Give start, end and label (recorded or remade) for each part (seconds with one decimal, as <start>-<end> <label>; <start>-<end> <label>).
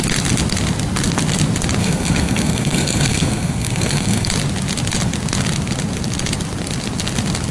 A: 0.0-1.8 recorded; 1.8-4.3 remade; 4.3-7.5 recorded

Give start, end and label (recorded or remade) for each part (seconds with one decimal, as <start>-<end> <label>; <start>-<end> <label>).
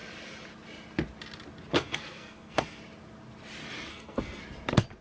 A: 0.0-1.7 recorded; 1.7-2.8 remade; 2.8-3.9 recorded; 3.9-4.4 remade; 4.4-5.0 recorded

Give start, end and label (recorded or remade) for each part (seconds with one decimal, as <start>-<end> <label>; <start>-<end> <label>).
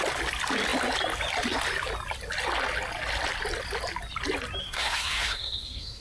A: 0.0-4.6 recorded; 4.6-6.0 remade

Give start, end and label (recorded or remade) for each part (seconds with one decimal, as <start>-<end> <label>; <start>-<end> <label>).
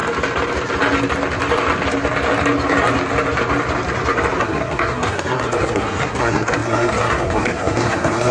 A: 0.0-4.4 recorded; 4.4-8.3 remade